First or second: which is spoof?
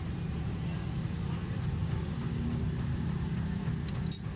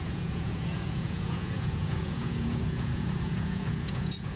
second